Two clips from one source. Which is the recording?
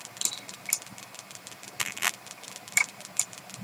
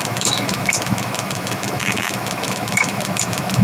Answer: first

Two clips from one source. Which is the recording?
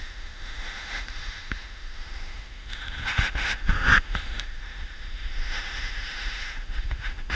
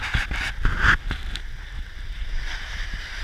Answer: second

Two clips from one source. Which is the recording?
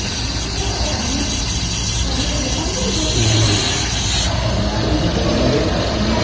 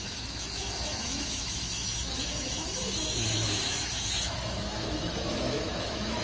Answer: first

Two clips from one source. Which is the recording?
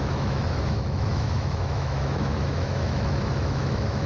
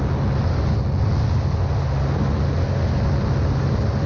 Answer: second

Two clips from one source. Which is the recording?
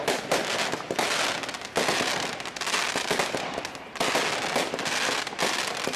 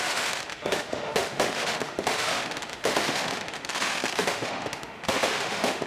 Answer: first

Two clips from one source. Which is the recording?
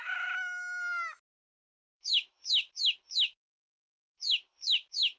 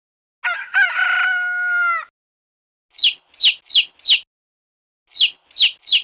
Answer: second